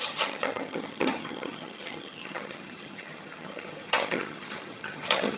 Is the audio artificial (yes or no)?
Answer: yes